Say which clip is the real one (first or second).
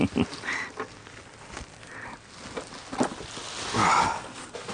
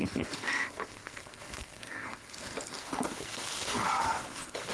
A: first